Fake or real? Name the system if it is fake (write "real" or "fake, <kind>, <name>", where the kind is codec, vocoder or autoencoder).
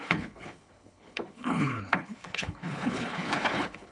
fake, codec, HILCodec